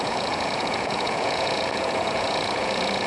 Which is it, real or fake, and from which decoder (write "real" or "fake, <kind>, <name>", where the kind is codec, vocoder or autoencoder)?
fake, vocoder, Vocos